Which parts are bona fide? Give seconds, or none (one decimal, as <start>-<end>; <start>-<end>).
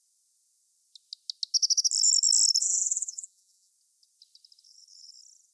0.0-2.6; 3.7-5.5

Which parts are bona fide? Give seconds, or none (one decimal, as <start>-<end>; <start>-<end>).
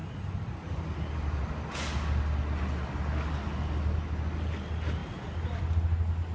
0.0-6.3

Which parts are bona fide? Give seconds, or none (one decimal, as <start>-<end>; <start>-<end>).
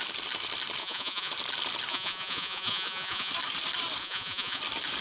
0.0-0.8; 1.3-1.9; 3.3-4.0; 4.6-5.0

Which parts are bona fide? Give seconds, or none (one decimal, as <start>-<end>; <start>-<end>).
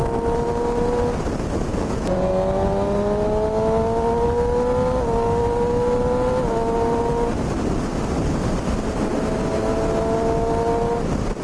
0.0-1.7; 2.3-11.4